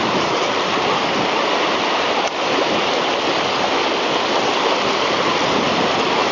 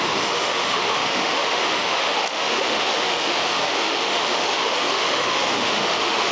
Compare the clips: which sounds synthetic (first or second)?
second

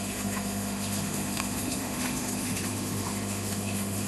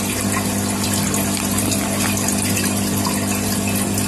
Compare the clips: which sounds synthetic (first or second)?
first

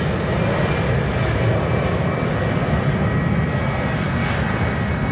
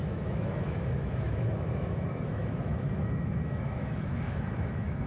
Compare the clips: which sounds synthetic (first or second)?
second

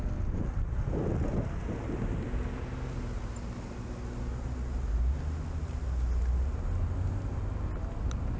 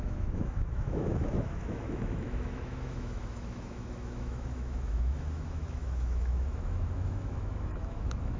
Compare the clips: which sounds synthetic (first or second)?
second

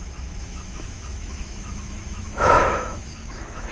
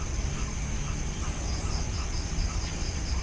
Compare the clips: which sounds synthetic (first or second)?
first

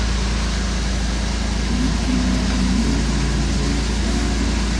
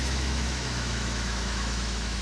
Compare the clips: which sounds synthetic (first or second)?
second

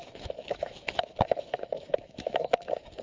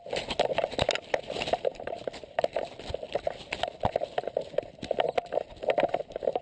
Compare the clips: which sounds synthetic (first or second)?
first